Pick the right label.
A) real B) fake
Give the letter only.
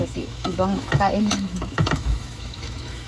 B